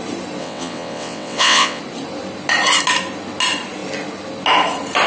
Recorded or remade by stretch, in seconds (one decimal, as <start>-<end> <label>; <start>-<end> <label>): 0.0-0.4 recorded; 0.4-1.8 remade; 1.8-5.1 recorded